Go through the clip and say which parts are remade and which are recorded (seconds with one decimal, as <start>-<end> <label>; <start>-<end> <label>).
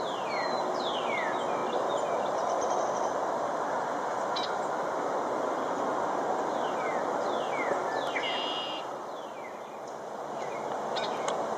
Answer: 0.0-11.6 recorded